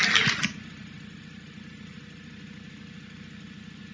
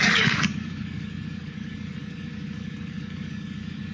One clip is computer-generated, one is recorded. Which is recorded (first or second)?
first